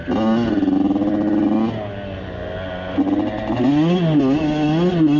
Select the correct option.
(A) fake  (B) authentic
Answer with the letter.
B